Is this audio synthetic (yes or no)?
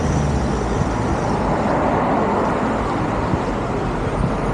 no